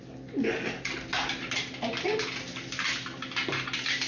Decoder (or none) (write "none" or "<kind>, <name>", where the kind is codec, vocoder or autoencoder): none